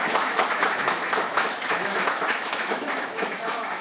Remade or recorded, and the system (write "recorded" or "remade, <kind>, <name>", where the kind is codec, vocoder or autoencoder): remade, autoencoder, DAC-VAE